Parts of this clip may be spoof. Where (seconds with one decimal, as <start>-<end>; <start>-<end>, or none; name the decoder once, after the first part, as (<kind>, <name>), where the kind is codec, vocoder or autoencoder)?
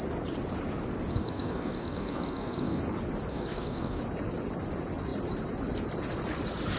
1.1-2.8 (codec, SNAC); 3.3-4.0